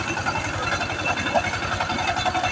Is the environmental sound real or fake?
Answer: real